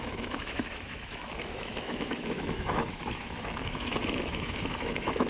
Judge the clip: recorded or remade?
remade